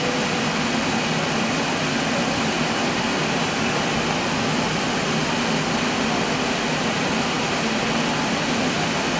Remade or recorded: recorded